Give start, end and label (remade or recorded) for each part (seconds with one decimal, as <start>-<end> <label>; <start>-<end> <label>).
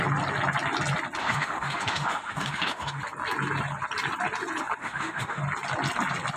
0.0-1.2 recorded; 1.2-3.0 remade; 3.0-4.8 recorded; 4.8-5.4 remade; 5.4-6.4 recorded